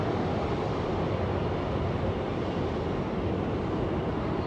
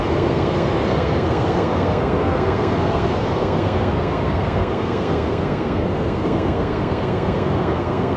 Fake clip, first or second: second